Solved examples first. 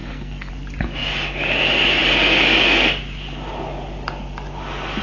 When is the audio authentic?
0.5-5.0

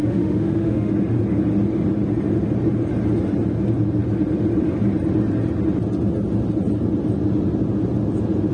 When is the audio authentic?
0.9-8.5

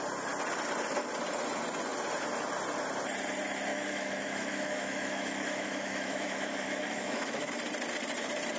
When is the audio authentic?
0.0-3.7; 7.5-8.6

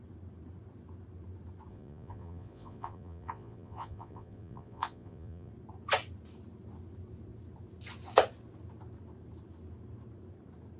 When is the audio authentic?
0.0-1.7; 5.5-10.8

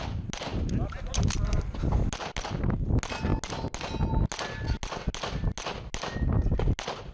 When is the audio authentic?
0.0-7.1